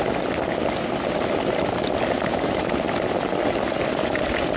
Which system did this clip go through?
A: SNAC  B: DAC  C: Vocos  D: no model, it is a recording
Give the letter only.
D